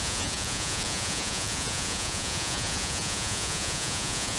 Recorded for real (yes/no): no